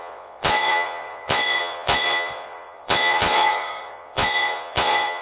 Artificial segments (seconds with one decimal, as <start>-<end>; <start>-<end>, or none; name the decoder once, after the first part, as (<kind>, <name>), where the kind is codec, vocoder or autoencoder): 0.0-5.2 (vocoder, Vocos)